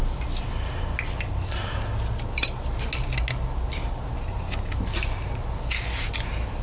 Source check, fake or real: real